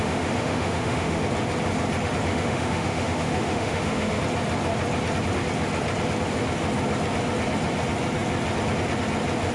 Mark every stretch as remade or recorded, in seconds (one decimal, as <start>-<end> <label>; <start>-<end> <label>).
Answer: 0.0-1.2 remade; 1.2-2.3 recorded; 2.3-4.2 remade; 4.2-9.5 recorded